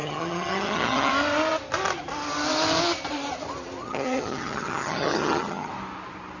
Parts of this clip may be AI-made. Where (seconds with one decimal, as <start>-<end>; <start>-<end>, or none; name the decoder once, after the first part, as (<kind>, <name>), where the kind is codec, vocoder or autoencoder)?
0.0-1.1 (vocoder, HiFi-GAN); 3.8-5.7